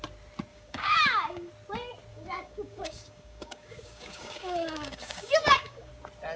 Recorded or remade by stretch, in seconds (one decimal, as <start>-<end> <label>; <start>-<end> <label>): 0.0-0.5 recorded; 0.5-1.5 remade; 1.5-2.1 recorded; 2.1-5.9 remade; 5.9-6.4 recorded